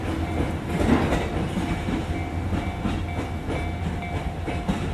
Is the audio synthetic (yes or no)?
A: no